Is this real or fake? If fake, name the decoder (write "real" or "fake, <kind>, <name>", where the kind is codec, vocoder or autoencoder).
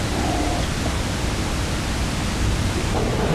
fake, vocoder, BigVGAN v2